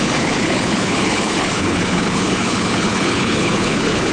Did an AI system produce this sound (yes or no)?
yes